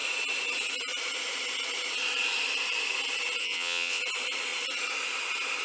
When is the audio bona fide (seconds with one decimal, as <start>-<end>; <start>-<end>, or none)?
0.0-3.4; 4.0-5.6